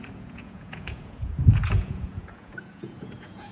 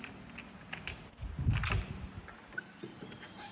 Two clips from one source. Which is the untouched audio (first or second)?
second